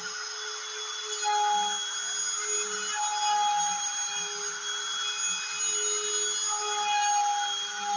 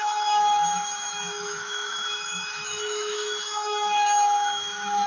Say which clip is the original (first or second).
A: first